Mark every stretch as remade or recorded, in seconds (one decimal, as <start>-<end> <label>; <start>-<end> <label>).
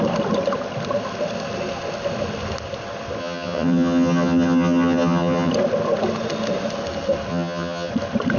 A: 0.0-3.2 recorded; 3.2-5.5 remade; 5.5-7.3 recorded; 7.3-7.9 remade; 7.9-8.4 recorded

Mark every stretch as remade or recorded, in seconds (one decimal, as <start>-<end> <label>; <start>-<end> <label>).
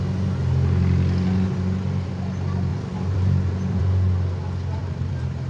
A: 0.0-2.7 recorded; 2.7-3.8 remade; 3.8-4.8 recorded; 4.8-5.5 remade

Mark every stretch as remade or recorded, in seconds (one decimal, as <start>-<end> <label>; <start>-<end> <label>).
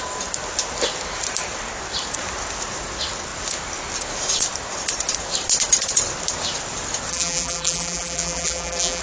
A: 0.0-7.1 recorded; 7.1-9.0 remade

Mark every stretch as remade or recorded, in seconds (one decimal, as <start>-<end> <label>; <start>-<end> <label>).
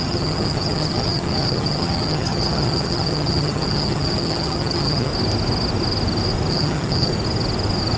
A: 0.0-5.1 remade; 5.1-6.5 recorded; 6.5-7.1 remade; 7.1-8.0 recorded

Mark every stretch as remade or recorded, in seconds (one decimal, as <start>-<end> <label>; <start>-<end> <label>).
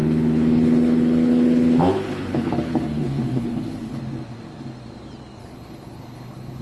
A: 0.0-4.0 remade; 4.0-5.4 recorded; 5.4-6.6 remade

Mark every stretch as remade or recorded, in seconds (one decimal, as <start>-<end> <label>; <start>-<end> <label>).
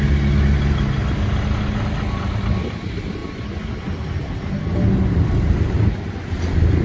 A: 0.0-6.8 recorded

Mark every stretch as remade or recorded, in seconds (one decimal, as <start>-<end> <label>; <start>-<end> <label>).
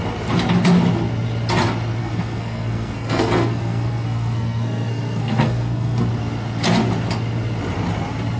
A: 0.0-2.0 recorded; 2.0-6.1 remade; 6.1-8.4 recorded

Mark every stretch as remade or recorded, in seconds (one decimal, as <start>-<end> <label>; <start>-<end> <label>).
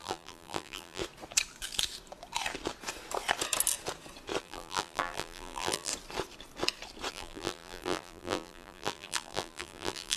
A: 0.0-1.0 remade; 1.0-4.4 recorded; 4.4-5.9 remade; 5.9-7.1 recorded; 7.1-10.2 remade